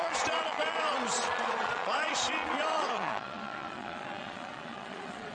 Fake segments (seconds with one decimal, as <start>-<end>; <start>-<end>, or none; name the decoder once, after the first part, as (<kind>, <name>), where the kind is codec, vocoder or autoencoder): 0.0-5.3 (vocoder, Vocos)